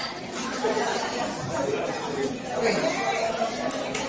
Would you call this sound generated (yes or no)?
no